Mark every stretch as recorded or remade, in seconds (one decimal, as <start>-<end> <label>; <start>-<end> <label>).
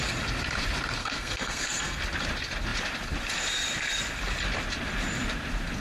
0.0-1.0 recorded; 1.0-2.0 remade; 2.0-5.8 recorded